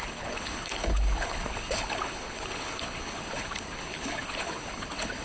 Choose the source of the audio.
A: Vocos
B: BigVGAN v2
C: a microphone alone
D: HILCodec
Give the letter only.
D